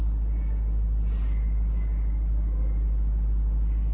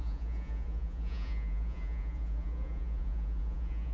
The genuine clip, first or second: first